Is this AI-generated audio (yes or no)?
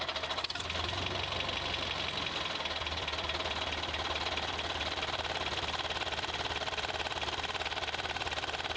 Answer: no